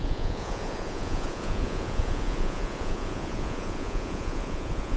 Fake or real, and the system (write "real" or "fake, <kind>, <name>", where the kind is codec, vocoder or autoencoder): fake, vocoder, Vocos